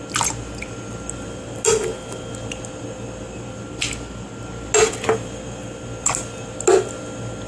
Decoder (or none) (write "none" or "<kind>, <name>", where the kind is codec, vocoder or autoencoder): none